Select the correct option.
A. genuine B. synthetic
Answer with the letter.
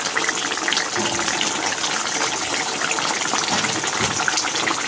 A